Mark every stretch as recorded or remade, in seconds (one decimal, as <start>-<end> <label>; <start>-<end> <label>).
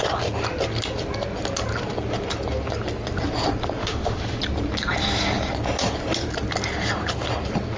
0.0-3.8 recorded; 3.8-4.4 remade; 4.4-7.8 recorded